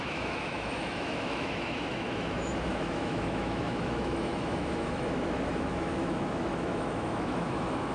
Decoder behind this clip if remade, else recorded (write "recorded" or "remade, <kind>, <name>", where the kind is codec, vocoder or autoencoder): remade, autoencoder, DAC-VAE